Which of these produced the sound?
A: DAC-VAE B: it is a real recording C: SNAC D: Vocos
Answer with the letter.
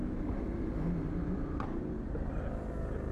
B